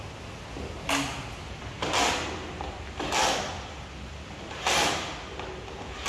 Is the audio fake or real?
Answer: real